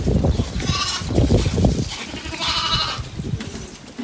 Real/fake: real